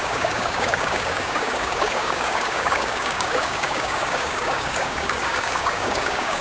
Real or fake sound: fake